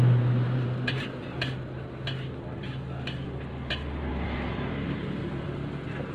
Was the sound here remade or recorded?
recorded